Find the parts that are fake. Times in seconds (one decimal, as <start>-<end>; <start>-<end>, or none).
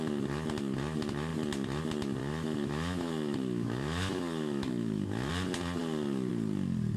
2.2-5.3